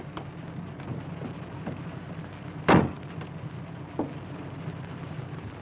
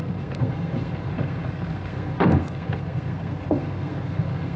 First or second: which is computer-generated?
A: second